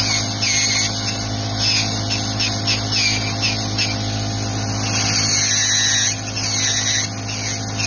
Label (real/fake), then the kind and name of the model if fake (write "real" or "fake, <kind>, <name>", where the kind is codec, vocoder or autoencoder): real